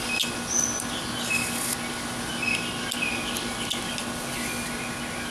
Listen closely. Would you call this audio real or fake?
real